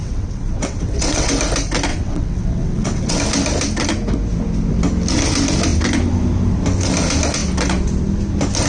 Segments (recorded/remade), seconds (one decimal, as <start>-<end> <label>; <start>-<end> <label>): 0.0-1.3 remade; 1.3-1.9 recorded; 1.9-3.2 remade; 3.2-8.7 recorded